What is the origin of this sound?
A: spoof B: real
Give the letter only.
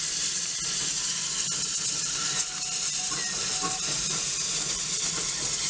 B